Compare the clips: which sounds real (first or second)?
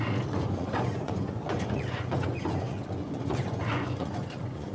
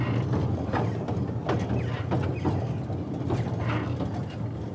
second